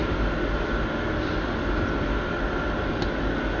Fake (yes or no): no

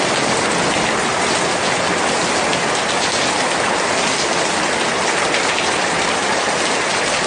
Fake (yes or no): no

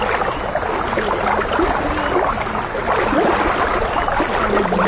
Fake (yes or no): no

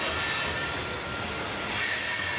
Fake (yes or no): no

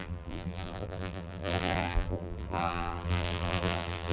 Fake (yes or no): yes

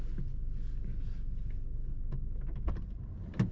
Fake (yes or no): no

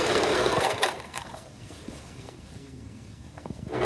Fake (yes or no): yes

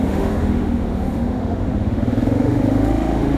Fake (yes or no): yes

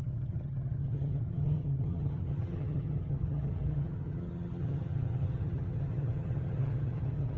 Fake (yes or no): yes